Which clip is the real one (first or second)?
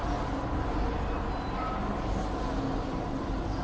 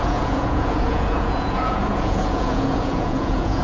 first